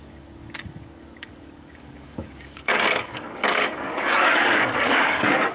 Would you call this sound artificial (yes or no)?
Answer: yes